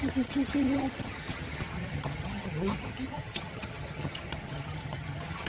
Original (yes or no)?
no